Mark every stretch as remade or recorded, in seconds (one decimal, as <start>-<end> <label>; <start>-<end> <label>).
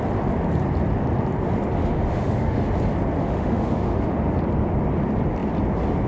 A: 0.0-1.8 recorded; 1.8-2.7 remade; 2.7-3.2 recorded; 3.2-4.3 remade; 4.3-6.1 recorded